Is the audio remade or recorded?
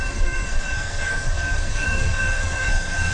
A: remade